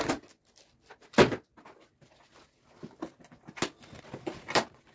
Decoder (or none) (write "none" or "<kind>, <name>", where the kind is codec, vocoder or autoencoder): none